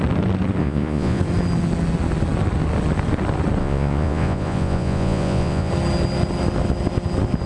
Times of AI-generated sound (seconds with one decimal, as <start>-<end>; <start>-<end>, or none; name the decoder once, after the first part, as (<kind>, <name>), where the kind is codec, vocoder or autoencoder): 0.6-1.2 (vocoder, Vocos); 3.6-5.7